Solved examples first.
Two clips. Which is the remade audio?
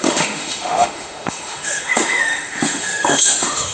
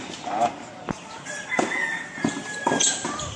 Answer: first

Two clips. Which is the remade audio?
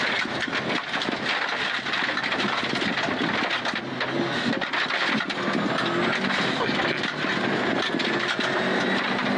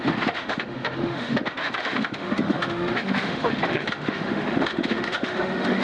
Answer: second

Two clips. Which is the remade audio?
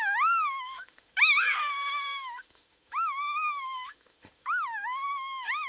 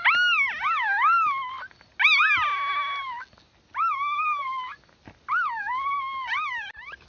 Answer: first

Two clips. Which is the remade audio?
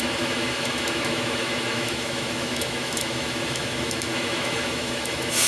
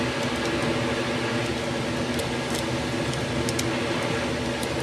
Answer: first